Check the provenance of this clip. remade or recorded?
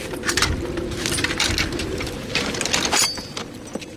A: recorded